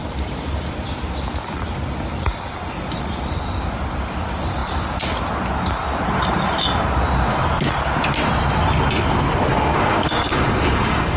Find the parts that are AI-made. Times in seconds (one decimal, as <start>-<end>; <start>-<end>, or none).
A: 9.5-11.2